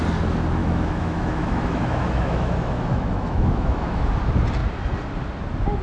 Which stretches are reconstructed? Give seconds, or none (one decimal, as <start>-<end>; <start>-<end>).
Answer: 0.6-4.1